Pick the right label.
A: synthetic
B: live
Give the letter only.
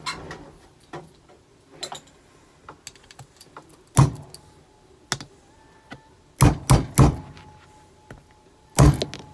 B